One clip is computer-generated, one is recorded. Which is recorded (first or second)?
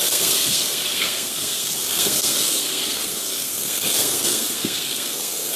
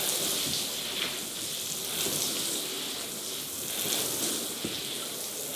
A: second